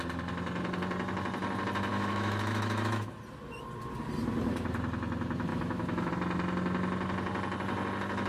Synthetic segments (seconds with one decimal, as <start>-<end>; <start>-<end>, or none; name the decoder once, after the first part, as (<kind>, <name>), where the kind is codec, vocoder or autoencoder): 1.9-3.1 (autoencoder, DAC-VAE); 5.5-6.1

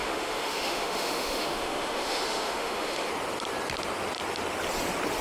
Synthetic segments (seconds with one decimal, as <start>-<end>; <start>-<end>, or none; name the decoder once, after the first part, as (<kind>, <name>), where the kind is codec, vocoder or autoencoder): 0.0-3.1 (autoencoder, DAC-VAE)

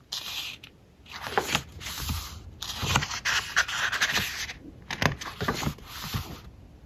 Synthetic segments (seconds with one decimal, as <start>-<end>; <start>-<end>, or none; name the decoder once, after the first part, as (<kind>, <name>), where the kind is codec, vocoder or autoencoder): none

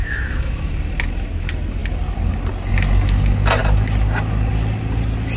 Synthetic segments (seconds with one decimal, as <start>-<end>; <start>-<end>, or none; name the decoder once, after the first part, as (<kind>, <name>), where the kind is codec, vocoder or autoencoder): 0.0-0.7 (autoencoder, DAC-VAE)

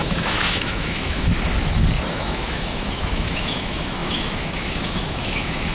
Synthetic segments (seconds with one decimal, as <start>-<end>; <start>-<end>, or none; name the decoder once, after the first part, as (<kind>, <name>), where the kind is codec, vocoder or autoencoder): 0.0-1.3 (autoencoder, DAC-VAE); 2.1-5.7

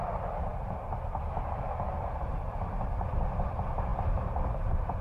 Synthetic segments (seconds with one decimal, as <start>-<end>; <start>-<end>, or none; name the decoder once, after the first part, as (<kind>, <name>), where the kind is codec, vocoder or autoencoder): none

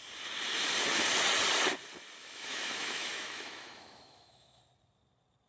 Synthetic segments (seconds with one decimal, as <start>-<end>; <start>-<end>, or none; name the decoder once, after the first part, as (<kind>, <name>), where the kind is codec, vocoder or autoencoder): 2.2-4.6 (autoencoder, DAC-VAE)

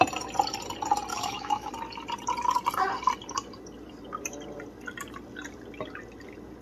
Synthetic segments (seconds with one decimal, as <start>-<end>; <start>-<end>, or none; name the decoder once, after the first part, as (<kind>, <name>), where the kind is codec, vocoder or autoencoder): 1.1-1.7 (autoencoder, DAC-VAE)